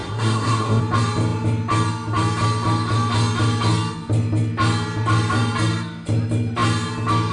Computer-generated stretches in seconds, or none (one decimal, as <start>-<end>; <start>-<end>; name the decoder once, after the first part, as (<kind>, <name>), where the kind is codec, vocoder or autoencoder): 0.0-0.8 (codec, SNAC)